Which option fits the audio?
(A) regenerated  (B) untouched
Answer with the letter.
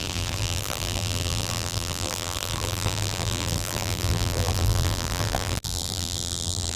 A